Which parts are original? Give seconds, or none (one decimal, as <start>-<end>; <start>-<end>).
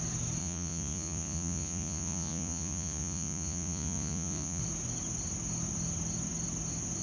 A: 0.0-0.4; 4.6-7.0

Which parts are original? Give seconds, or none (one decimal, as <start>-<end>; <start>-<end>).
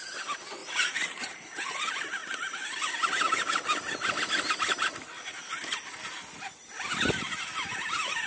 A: 0.0-0.6; 1.8-2.2; 2.9-8.3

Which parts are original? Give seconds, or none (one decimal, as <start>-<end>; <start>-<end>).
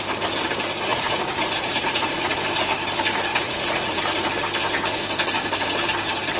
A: 0.0-0.9; 2.3-3.3; 4.0-6.4